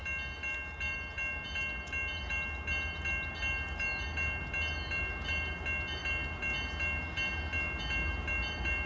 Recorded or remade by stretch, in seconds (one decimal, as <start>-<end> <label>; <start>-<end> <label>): 0.0-8.9 recorded